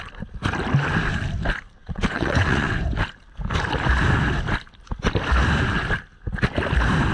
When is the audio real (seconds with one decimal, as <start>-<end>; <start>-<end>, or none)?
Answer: 0.0-1.8; 2.8-7.1